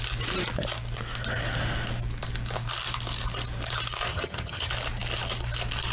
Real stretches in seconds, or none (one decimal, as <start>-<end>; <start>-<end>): 0.0-4.1; 4.7-5.9